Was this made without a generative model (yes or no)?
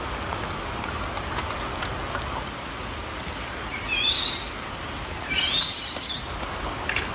yes